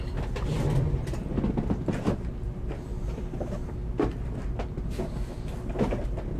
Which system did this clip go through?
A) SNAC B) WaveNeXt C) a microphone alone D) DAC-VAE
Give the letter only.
C